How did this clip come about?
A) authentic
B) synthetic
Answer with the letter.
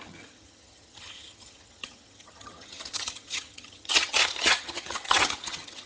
B